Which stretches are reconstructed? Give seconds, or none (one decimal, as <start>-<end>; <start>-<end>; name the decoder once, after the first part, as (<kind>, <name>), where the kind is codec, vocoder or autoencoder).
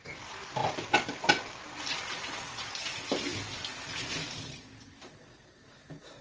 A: none